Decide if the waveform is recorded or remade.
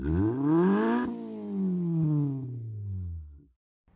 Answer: recorded